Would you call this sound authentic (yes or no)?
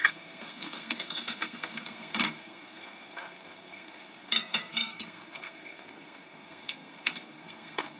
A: no